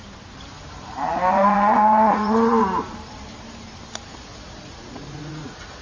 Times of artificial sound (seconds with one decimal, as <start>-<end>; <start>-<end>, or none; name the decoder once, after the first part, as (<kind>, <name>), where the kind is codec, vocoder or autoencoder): 1.4-2.6 (vocoder, Vocos); 4.1-5.8